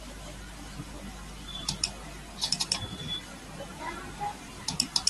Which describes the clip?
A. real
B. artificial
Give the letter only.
B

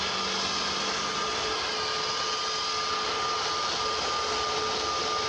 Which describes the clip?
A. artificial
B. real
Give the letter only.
B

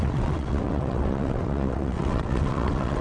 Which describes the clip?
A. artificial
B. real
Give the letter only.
A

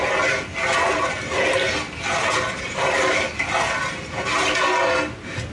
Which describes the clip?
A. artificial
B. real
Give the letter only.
B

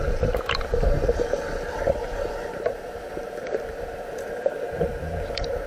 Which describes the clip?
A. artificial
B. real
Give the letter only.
A